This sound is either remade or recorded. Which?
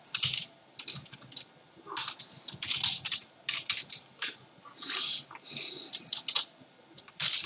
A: recorded